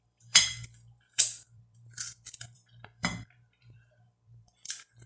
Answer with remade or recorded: remade